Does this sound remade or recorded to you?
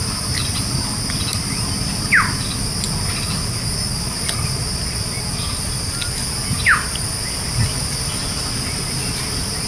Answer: recorded